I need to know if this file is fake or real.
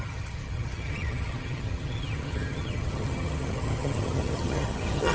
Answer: fake